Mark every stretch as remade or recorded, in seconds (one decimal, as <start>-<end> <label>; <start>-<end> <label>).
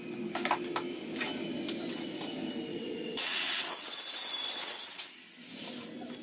0.0-2.7 recorded; 2.7-4.0 remade; 4.0-4.4 recorded; 4.4-5.1 remade; 5.1-6.2 recorded